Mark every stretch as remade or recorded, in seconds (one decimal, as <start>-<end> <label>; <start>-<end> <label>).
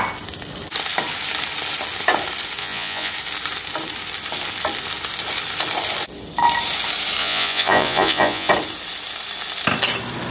0.0-2.6 recorded; 2.6-3.1 remade; 3.1-7.2 recorded; 7.2-8.5 remade; 8.5-10.3 recorded